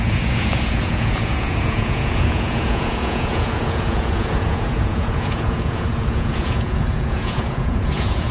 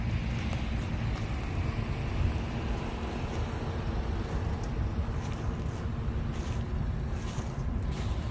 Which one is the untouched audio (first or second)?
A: second